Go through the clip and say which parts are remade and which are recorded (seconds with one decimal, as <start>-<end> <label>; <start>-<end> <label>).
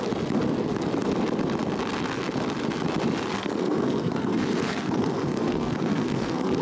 0.0-3.4 recorded; 3.4-6.6 remade